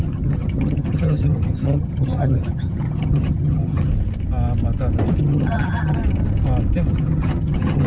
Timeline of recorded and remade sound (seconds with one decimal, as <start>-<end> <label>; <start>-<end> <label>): 0.0-3.9 remade; 3.9-5.2 recorded; 5.2-6.0 remade; 6.0-6.9 recorded; 6.9-7.9 remade